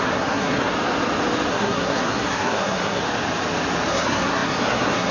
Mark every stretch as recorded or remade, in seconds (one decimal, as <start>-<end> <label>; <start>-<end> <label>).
0.0-0.7 remade; 0.7-1.5 recorded; 1.5-3.0 remade; 3.0-3.9 recorded; 3.9-5.1 remade